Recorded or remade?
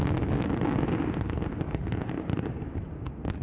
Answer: recorded